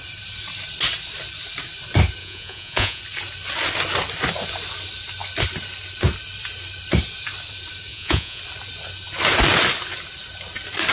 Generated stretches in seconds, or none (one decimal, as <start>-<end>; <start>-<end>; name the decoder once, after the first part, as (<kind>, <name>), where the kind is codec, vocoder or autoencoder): 2.2-3.0 (vocoder, Vocos); 7.9-8.4